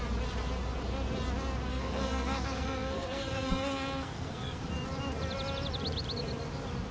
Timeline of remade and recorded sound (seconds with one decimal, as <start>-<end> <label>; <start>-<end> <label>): 0.0-1.7 recorded; 1.7-4.6 remade; 4.6-6.9 recorded